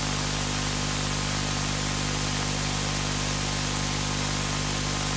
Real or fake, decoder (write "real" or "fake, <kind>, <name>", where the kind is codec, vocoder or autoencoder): real